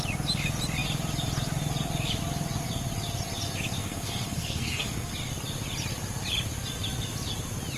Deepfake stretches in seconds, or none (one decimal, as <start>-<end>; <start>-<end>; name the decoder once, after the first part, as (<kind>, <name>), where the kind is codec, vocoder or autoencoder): 3.8-5.1 (codec, SNAC)